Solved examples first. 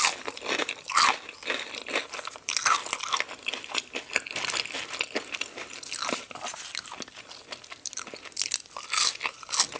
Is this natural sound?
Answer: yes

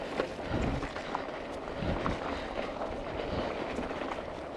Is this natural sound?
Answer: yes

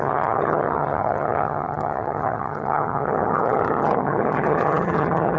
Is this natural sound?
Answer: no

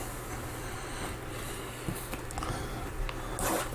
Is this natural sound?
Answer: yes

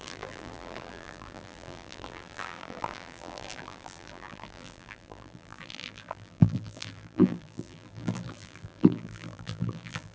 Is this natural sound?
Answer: no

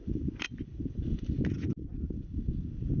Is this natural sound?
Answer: yes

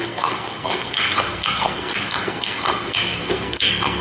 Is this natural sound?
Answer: no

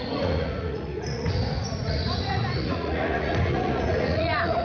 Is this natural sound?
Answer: no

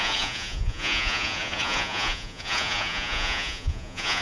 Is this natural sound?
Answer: no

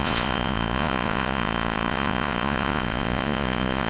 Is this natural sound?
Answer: no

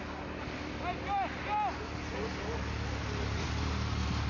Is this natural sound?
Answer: yes